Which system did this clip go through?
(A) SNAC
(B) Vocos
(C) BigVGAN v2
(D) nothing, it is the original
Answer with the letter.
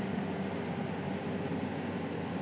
D